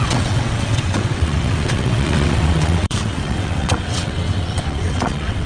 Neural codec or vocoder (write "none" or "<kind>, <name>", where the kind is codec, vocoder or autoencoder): vocoder, WaveNeXt